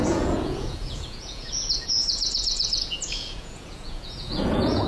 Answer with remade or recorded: remade